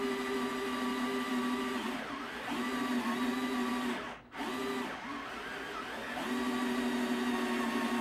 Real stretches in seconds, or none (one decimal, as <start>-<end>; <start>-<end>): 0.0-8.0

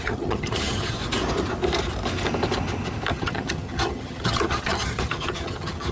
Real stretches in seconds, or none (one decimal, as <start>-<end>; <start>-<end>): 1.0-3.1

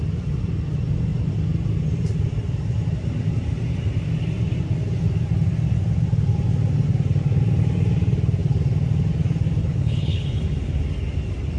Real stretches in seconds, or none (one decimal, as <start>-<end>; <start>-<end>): 0.0-9.6; 10.4-11.6

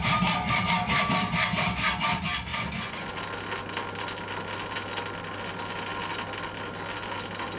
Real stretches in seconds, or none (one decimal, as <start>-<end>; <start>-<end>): 0.0-2.5; 3.1-7.6

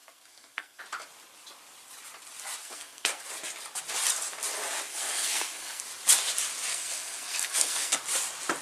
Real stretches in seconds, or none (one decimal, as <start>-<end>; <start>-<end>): 0.8-2.6; 3.3-4.9; 5.8-6.7; 8.0-8.6

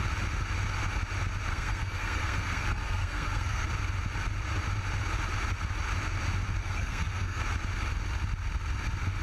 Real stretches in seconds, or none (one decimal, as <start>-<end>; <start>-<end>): 0.0-1.5; 3.7-6.6; 7.4-9.2

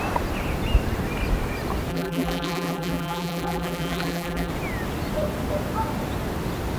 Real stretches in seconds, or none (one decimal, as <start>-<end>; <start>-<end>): 0.0-1.9; 4.5-6.8